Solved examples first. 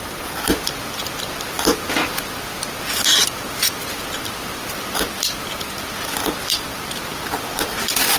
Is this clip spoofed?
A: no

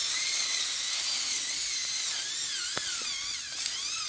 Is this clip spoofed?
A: no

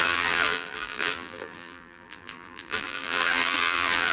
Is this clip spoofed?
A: yes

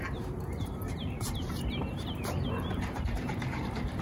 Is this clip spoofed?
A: yes